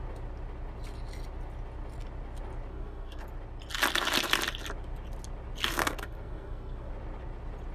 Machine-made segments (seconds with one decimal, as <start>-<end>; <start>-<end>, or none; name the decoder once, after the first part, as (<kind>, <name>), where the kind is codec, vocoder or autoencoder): 2.7-3.2 (codec, SNAC); 5.8-6.9